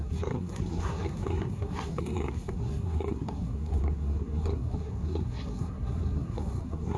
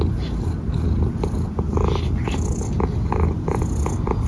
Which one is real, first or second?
second